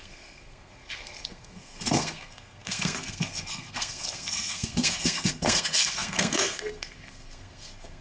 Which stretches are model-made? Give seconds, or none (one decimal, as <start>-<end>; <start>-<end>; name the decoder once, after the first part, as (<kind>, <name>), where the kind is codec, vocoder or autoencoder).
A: 0.0-8.0 (codec, SNAC)